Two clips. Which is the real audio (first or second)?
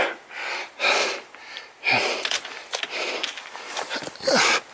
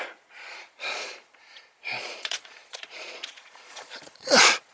first